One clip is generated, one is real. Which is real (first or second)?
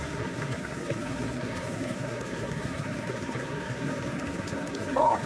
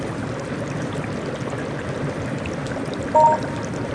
second